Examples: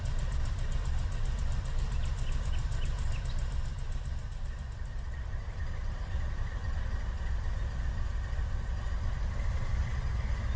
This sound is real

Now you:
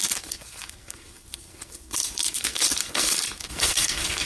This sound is fake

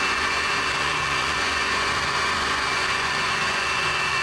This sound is fake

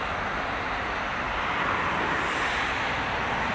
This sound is real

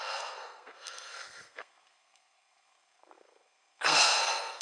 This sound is fake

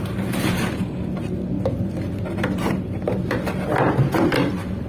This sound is fake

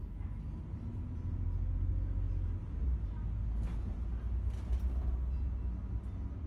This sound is real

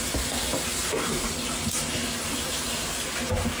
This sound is real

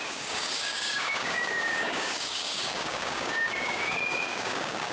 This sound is fake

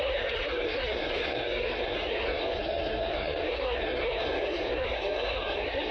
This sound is fake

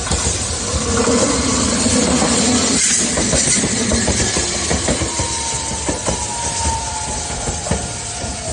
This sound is real